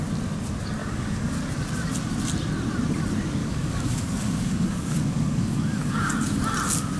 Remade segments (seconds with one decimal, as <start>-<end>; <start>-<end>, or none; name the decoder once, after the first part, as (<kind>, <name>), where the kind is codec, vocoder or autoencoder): 0.8-1.4 (codec, DAC); 3.4-6.1